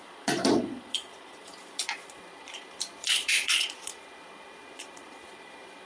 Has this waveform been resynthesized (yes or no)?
yes